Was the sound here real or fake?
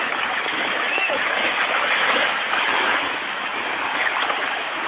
fake